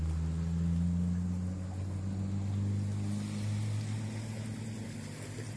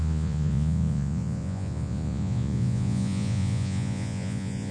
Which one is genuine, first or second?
first